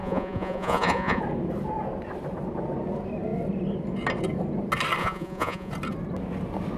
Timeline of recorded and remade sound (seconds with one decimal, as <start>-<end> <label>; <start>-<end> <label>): 0.0-1.2 remade; 1.2-5.0 recorded; 5.0-5.7 remade; 5.7-6.8 recorded